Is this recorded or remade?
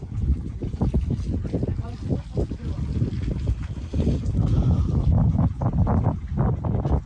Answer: recorded